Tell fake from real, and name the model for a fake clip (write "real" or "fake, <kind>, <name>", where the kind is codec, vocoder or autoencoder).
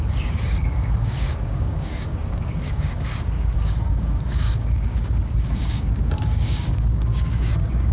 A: fake, codec, DAC